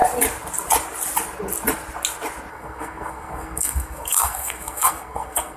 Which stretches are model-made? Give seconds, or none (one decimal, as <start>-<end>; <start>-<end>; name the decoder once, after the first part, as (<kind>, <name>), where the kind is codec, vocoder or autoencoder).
2.5-5.6 (codec, SNAC)